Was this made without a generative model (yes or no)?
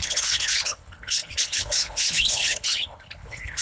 no